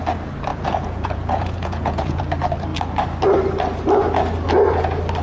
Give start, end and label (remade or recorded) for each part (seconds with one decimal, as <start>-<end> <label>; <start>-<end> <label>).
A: 0.0-0.5 recorded; 0.5-2.2 remade; 2.2-5.2 recorded